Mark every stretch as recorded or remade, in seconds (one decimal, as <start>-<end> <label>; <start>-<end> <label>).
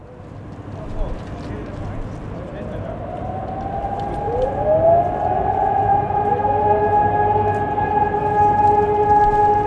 0.0-5.2 recorded; 5.2-6.2 remade; 6.2-9.7 recorded